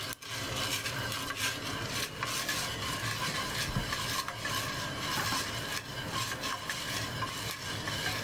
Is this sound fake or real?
real